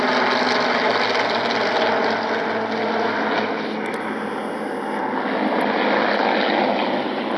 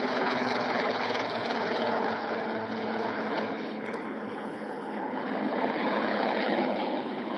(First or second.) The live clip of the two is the first